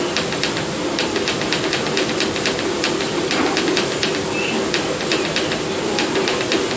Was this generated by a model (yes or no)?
no